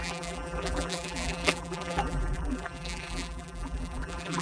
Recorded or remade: remade